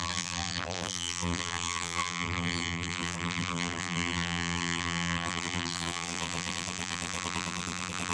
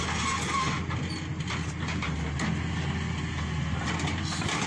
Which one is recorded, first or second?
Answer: second